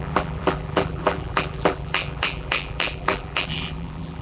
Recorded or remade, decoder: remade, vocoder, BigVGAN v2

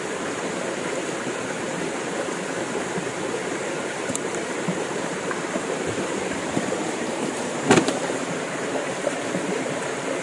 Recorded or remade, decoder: remade, vocoder, BigVGAN v2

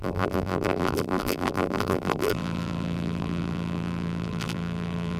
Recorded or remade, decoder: remade, vocoder, BigVGAN v2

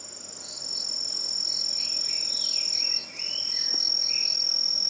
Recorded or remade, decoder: recorded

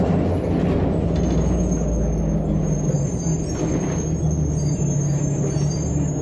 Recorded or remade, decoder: recorded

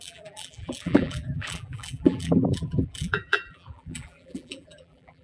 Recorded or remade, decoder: remade, vocoder, BigVGAN v2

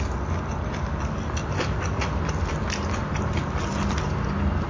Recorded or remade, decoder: recorded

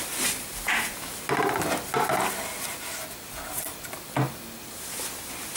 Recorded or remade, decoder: recorded